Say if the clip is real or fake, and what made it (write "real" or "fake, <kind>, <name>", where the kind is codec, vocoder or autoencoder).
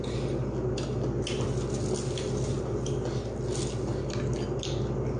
real